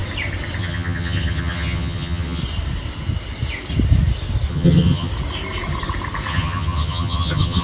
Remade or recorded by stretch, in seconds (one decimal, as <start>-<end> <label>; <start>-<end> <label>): 0.0-0.6 recorded; 0.6-2.4 remade; 2.4-4.5 recorded; 4.5-5.1 remade; 5.1-6.3 recorded; 6.3-7.6 remade